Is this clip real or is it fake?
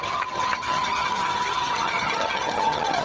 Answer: fake